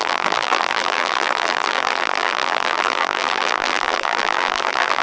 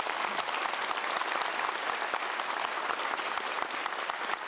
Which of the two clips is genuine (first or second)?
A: second